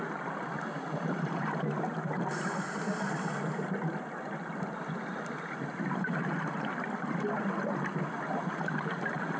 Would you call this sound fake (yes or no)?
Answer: no